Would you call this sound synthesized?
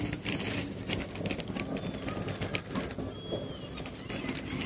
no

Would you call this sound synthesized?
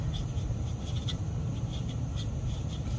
yes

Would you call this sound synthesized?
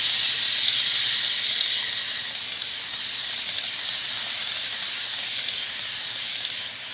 no